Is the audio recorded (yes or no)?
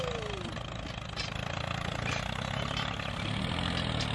yes